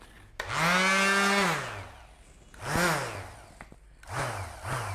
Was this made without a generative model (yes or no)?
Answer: yes